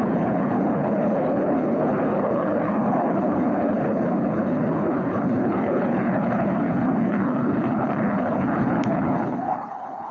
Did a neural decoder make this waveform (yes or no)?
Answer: yes